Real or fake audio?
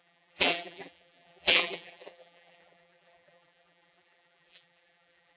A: fake